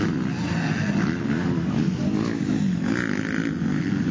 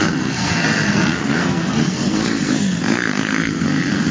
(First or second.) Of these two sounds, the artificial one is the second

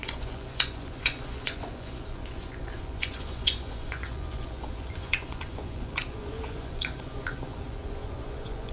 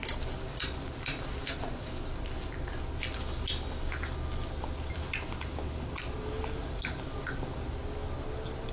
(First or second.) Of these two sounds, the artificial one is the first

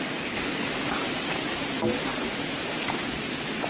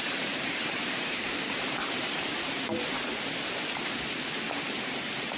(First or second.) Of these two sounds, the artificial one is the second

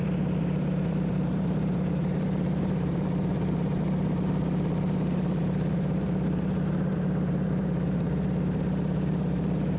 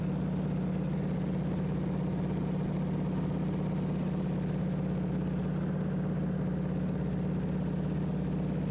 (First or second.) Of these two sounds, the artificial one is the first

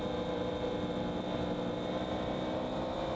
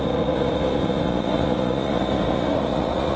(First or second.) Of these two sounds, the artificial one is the second